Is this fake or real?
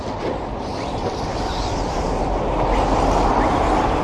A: real